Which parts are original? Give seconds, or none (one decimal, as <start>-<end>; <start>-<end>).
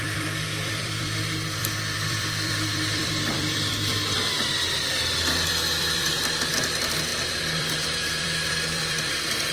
none